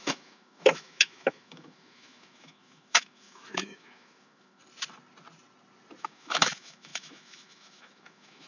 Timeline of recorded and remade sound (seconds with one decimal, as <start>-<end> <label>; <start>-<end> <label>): 0.0-4.6 remade; 4.6-6.0 recorded; 6.0-8.5 remade